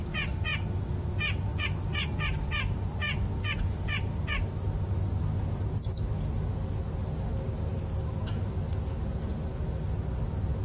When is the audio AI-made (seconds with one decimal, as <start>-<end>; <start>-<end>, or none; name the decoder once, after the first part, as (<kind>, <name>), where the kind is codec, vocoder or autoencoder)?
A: none